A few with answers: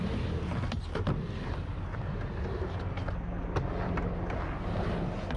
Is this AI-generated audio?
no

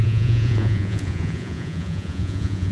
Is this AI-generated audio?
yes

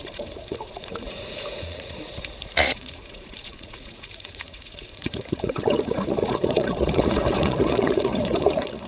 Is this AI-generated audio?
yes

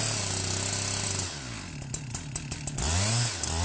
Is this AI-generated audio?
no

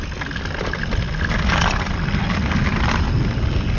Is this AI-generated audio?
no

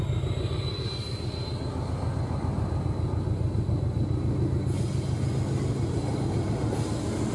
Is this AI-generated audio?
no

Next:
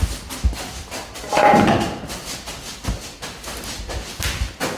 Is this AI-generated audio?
no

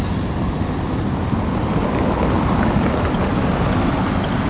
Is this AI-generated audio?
no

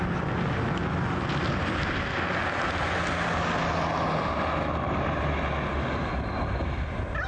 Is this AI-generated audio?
no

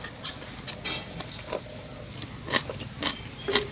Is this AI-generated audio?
no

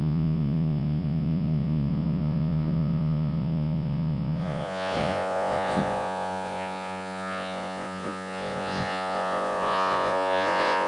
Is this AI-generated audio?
yes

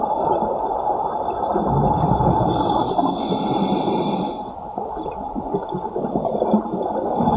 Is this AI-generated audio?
no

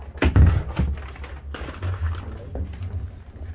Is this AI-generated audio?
no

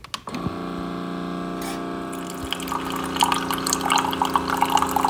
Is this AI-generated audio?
no